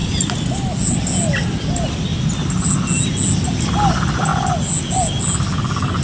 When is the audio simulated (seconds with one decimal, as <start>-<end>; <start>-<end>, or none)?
none